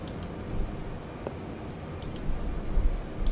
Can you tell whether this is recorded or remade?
recorded